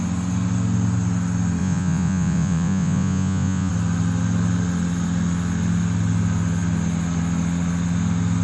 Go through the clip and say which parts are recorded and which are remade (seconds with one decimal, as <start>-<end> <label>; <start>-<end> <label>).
0.0-1.6 recorded; 1.6-3.7 remade; 3.7-8.4 recorded